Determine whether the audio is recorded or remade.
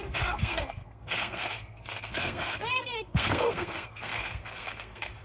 remade